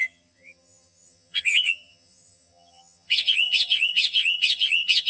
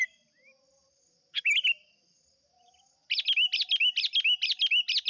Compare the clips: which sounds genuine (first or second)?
second